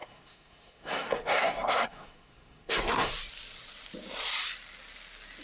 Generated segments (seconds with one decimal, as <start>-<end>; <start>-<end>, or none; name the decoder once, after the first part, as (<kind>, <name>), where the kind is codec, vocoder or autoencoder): 0.0-3.1 (codec, SNAC)